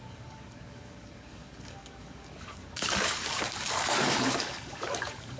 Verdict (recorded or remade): remade